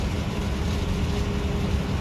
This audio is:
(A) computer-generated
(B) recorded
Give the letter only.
B